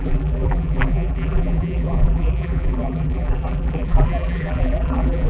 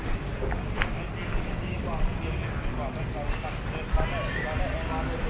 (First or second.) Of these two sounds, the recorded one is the second